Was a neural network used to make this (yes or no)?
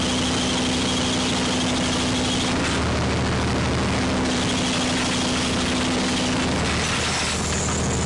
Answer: no